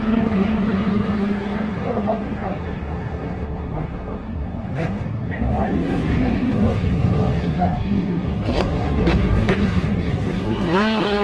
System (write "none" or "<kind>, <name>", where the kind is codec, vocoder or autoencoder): codec, SNAC